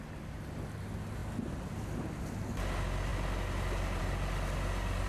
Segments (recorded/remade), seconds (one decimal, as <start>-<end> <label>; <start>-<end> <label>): 0.0-5.1 recorded